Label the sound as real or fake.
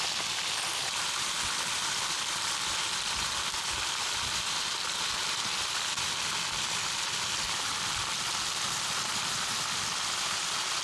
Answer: real